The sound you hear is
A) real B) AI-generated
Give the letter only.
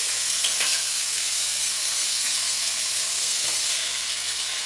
B